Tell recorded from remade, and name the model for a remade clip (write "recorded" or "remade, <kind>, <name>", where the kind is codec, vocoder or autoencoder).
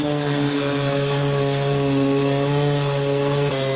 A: remade, codec, SNAC